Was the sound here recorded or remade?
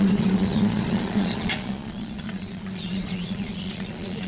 remade